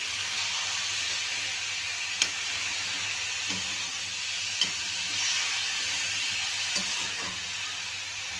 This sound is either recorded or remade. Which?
recorded